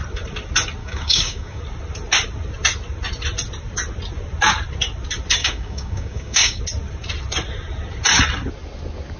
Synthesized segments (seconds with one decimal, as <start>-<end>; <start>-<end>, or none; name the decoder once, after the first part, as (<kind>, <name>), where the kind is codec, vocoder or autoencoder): 0.8-1.6 (codec, DAC); 5.4-6.6